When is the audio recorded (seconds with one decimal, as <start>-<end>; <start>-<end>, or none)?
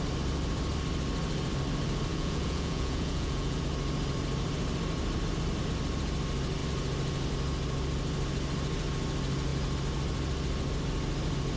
0.0-2.1; 3.6-11.6